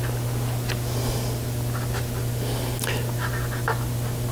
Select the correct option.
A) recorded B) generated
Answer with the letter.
A